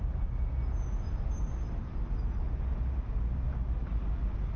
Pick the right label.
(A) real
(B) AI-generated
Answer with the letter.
A